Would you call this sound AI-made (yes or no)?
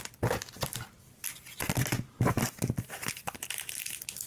no